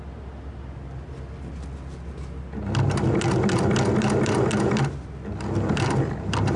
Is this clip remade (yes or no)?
no